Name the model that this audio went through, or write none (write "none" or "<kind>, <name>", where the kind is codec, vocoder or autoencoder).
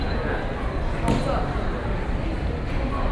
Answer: none